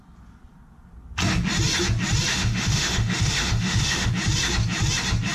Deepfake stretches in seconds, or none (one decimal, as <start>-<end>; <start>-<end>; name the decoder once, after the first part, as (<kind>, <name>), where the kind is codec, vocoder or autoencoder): 2.3-4.1 (autoencoder, DAC-VAE)